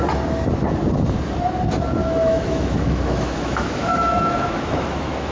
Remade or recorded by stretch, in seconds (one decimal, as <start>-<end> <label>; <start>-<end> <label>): 0.0-2.0 recorded; 2.0-5.3 remade